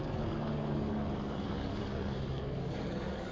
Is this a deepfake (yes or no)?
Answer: yes